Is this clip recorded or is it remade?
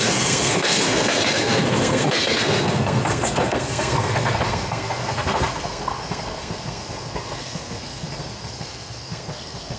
remade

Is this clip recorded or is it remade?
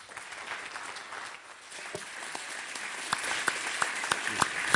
recorded